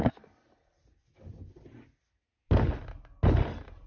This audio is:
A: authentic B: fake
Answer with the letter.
A